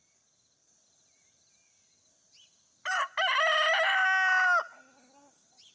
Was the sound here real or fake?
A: real